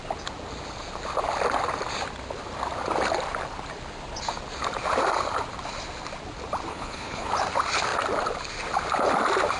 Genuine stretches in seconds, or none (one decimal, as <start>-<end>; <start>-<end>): 0.0-6.7; 7.3-9.6